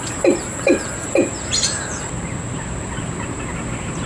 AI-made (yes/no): no